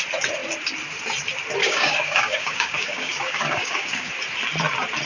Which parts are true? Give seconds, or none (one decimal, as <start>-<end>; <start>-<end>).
0.0-1.6; 4.1-5.1